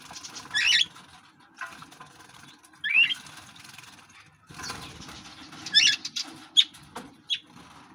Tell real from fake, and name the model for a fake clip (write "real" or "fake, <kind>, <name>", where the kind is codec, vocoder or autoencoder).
real